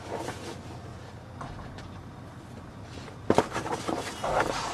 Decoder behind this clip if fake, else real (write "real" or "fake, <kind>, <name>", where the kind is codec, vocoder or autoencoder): real